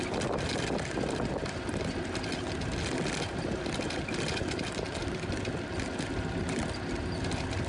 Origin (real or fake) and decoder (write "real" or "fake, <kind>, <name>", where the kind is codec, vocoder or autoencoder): real